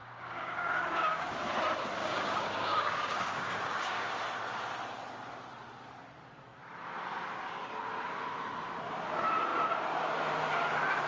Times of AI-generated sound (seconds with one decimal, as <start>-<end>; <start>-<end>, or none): 0.0-1.3; 2.0-4.1